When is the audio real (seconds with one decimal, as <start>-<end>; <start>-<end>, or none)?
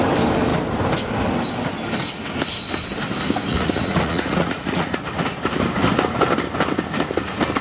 0.0-3.5; 5.0-7.6